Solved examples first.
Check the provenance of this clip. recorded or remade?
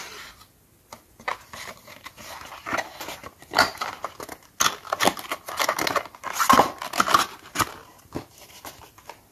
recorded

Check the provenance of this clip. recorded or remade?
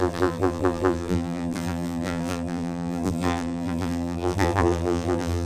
remade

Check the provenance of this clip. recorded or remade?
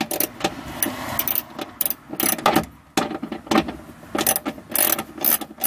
recorded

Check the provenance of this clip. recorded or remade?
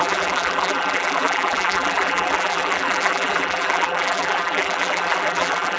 remade